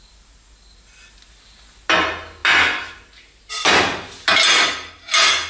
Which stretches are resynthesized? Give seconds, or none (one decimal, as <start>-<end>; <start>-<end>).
none